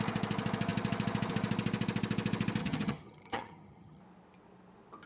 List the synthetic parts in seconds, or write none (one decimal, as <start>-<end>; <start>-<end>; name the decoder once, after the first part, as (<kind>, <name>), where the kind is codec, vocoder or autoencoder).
2.6-4.0 (vocoder, HiFi-GAN)